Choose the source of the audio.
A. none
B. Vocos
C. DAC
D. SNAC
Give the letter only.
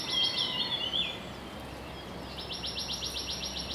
A